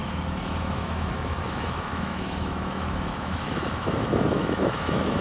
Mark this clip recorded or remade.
remade